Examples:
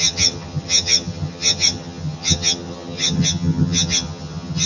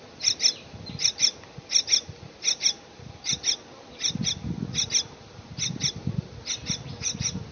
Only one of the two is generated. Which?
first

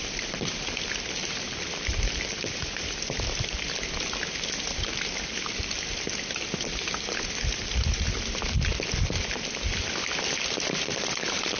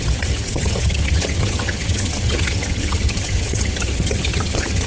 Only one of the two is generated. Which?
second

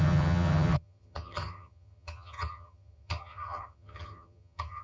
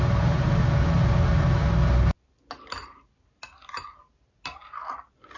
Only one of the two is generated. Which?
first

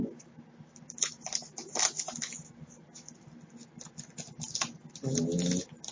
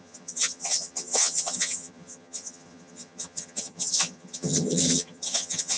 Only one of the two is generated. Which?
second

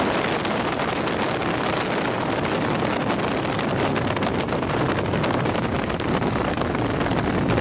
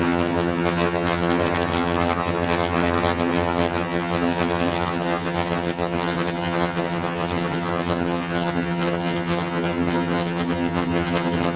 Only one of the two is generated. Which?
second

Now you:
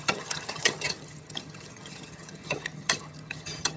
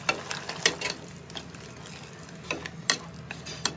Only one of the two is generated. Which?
first